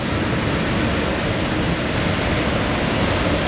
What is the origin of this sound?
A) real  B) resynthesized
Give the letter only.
A